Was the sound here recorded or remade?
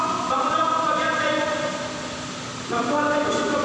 recorded